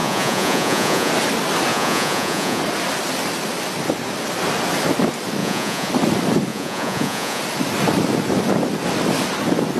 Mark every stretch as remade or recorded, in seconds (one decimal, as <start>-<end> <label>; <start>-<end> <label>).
0.0-1.1 remade; 1.1-1.7 recorded; 1.7-2.6 remade; 2.6-5.4 recorded; 5.4-5.9 remade; 5.9-6.5 recorded; 6.5-7.4 remade; 7.4-9.8 recorded